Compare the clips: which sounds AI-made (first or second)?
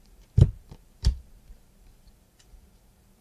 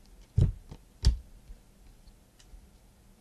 first